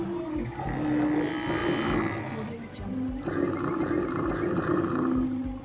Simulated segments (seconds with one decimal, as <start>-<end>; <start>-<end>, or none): none